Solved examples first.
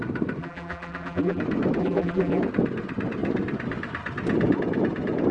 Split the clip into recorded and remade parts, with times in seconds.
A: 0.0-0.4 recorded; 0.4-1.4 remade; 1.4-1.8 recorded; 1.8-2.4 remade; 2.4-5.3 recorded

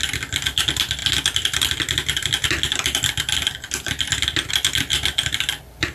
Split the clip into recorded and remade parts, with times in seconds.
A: 0.0-5.9 recorded

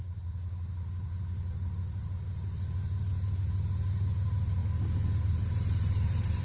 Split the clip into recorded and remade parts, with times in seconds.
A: 0.0-4.6 remade; 4.6-5.4 recorded; 5.4-6.4 remade

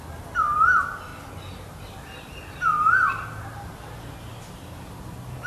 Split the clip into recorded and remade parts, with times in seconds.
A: 0.0-5.5 recorded

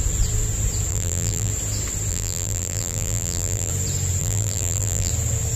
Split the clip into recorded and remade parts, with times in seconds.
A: 0.0-0.9 recorded; 0.9-1.5 remade; 1.5-2.1 recorded; 2.1-3.7 remade; 3.7-4.2 recorded; 4.2-5.1 remade; 5.1-5.6 recorded

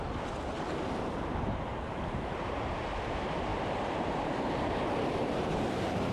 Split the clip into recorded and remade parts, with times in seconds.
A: 0.0-1.7 recorded; 1.7-2.9 remade; 2.9-3.5 recorded; 3.5-4.7 remade; 4.7-5.2 recorded; 5.2-6.1 remade

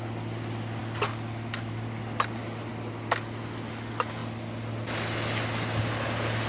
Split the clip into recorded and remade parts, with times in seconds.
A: 0.0-6.5 recorded

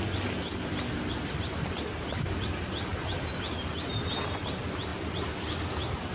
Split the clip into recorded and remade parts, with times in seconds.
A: 0.0-4.9 recorded; 4.9-5.6 remade; 5.6-6.1 recorded